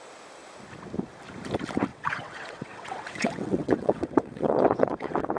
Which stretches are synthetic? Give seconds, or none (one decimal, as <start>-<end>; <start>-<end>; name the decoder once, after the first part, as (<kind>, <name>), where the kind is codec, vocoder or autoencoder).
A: 1.9-5.4 (vocoder, WaveNeXt)